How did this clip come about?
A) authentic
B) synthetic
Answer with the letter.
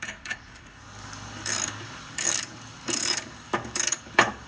B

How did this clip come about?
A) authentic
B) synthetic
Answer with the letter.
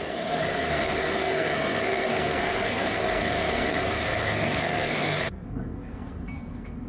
B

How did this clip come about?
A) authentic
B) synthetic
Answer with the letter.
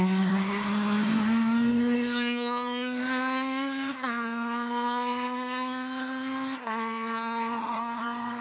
B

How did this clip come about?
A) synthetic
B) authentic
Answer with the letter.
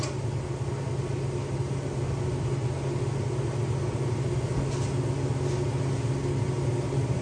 B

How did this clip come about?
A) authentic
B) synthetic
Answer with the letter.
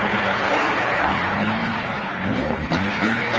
B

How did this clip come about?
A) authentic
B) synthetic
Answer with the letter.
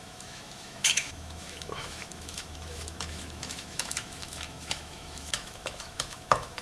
B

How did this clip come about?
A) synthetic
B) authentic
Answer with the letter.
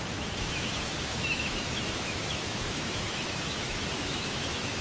A